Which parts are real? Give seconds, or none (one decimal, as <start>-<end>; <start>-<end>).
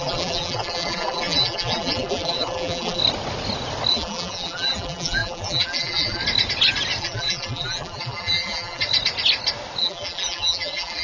3.0-3.9; 6.2-7.0; 8.8-9.8